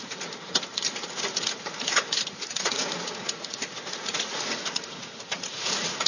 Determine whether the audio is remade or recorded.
remade